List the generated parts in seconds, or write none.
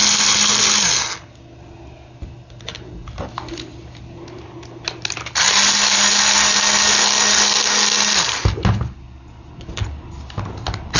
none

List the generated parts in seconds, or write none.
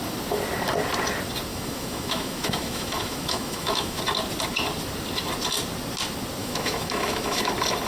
1.5-4.0 (autoencoder, DAC-VAE); 6.4-7.5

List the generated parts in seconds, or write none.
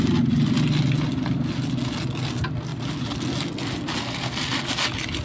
none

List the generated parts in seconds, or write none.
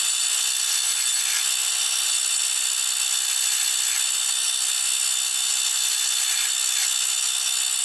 none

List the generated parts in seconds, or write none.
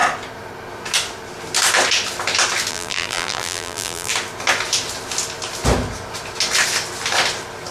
2.7-4.1 (vocoder, BigVGAN v2)